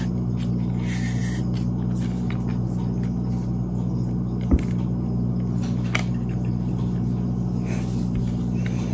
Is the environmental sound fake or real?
real